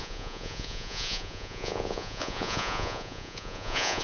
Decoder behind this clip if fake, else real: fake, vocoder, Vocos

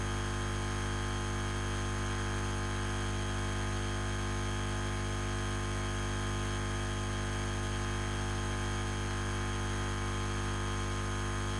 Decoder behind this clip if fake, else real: real